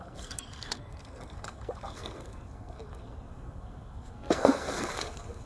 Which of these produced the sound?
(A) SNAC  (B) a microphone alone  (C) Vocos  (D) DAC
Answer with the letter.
A